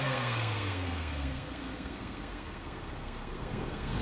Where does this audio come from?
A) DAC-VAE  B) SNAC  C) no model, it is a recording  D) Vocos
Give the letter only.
B